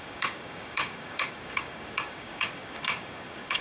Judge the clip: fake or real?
fake